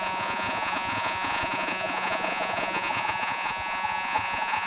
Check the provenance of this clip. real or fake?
fake